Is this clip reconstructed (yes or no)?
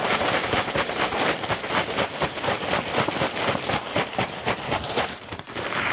yes